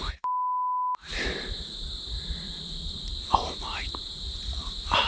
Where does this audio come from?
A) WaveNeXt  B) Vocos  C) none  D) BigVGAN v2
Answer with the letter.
C